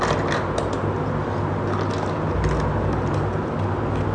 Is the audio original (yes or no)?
yes